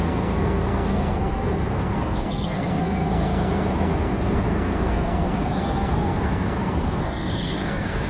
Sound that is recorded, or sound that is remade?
remade